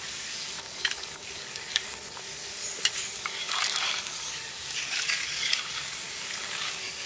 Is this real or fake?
fake